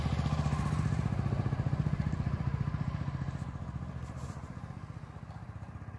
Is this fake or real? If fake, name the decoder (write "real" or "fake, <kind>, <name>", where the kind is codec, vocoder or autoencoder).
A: fake, vocoder, BigVGAN v2